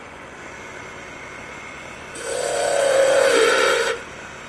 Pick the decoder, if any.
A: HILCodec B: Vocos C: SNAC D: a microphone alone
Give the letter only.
B